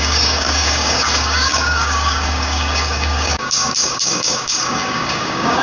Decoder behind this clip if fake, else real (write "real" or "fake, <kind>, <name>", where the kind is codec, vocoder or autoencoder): fake, codec, DAC